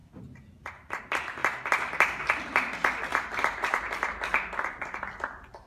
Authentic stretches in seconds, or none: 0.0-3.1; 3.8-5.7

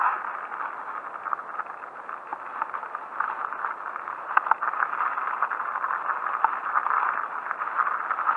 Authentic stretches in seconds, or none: 0.0-2.3; 3.9-8.4

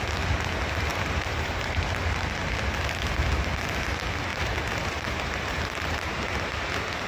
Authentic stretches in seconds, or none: 0.0-0.9; 1.8-4.3; 6.4-7.1